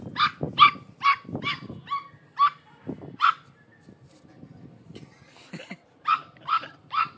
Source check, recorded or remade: recorded